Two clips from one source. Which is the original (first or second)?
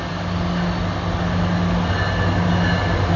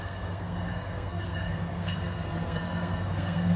first